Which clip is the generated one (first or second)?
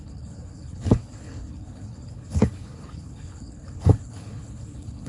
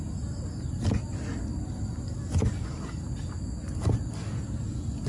first